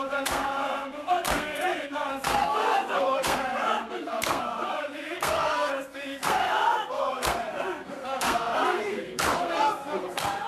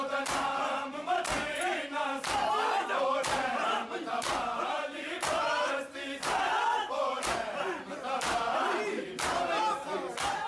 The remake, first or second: first